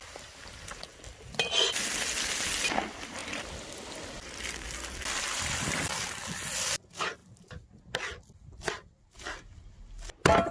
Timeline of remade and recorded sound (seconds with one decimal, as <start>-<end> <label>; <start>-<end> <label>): 0.0-10.5 recorded